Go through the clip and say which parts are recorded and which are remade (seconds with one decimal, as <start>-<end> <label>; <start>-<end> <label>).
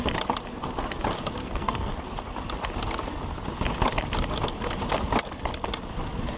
0.0-1.4 recorded; 1.4-1.9 remade; 1.9-6.4 recorded